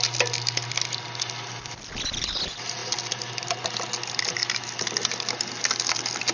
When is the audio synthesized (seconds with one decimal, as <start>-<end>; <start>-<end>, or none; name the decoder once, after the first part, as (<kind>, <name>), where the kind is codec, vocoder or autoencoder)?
none